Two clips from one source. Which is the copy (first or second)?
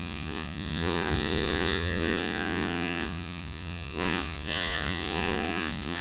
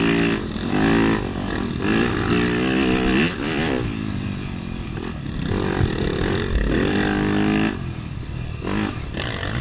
first